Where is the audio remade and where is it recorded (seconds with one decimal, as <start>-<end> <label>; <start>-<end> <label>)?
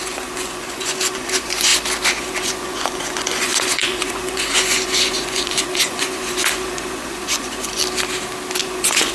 0.0-1.7 remade; 1.7-2.2 recorded; 2.2-7.8 remade; 7.8-8.6 recorded; 8.6-9.1 remade